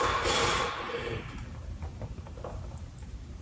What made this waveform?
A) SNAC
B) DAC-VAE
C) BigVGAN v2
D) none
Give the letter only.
C